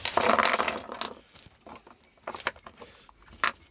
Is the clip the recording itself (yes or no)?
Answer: yes